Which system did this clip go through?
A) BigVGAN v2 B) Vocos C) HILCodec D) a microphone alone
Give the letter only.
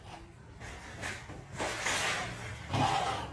D